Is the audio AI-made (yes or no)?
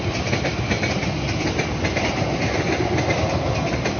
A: no